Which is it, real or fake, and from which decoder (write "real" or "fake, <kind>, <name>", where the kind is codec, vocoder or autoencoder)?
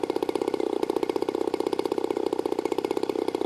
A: real